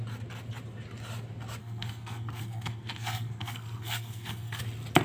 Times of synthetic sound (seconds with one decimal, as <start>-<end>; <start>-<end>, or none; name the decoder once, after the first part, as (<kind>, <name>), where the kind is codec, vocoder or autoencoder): 1.6-4.6 (codec, SNAC)